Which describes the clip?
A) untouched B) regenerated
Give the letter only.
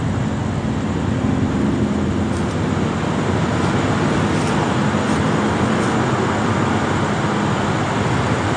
A